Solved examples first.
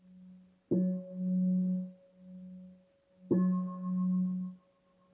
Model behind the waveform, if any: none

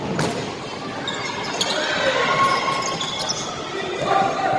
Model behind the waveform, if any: none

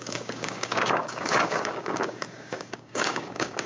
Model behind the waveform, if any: codec, DAC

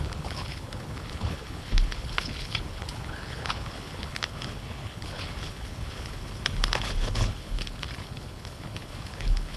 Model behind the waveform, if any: codec, HILCodec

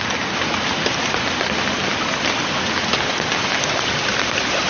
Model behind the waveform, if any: none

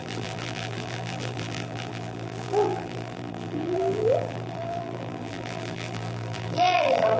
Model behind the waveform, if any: vocoder, BigVGAN v2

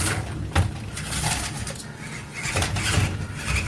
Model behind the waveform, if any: none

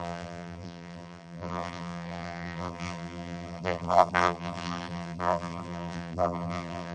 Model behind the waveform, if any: vocoder, BigVGAN v2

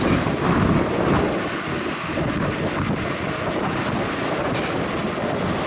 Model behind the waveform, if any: none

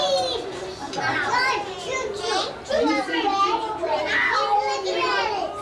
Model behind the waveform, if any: none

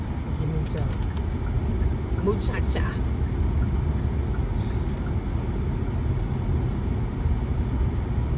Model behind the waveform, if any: none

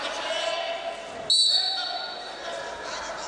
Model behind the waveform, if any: none